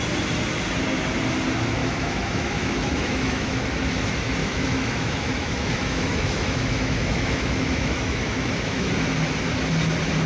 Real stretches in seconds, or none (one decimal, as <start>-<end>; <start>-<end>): 0.0-1.8; 3.6-4.4; 8.9-10.3